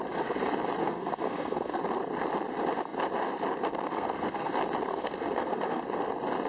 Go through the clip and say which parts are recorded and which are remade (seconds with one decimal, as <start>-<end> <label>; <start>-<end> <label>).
0.0-0.8 recorded; 0.8-1.8 remade; 1.8-3.9 recorded; 3.9-4.5 remade; 4.5-4.9 recorded; 4.9-5.8 remade; 5.8-6.5 recorded